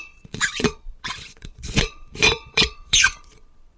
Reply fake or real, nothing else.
fake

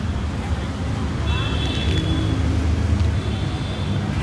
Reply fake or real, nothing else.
real